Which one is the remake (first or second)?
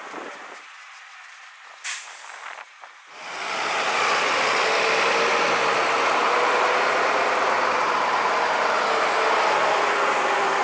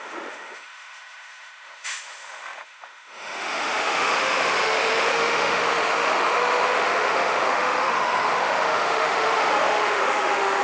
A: second